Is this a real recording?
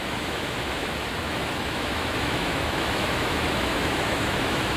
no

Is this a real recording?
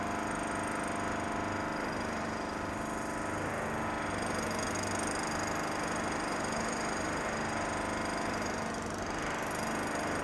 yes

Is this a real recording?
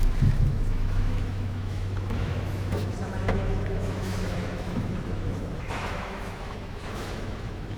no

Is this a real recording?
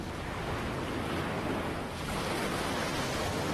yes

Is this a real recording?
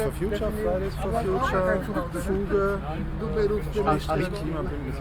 yes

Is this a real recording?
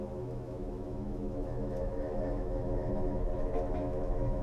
no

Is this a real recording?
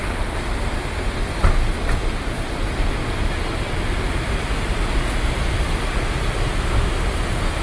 yes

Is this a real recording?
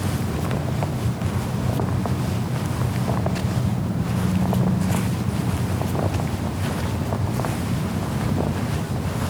yes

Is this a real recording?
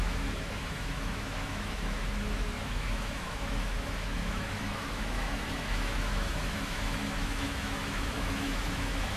no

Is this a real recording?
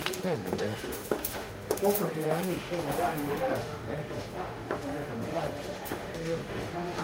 no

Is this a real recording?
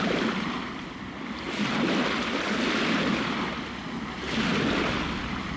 yes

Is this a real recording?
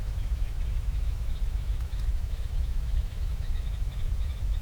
no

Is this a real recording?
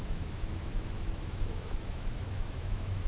no